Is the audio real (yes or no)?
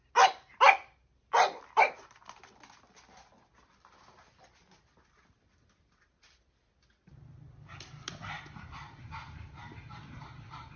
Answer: yes